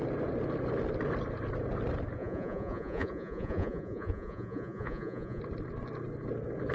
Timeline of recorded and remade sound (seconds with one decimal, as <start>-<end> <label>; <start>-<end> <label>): 0.0-2.2 recorded; 2.2-5.4 remade; 5.4-6.7 recorded